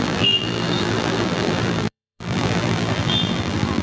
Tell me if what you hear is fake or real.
fake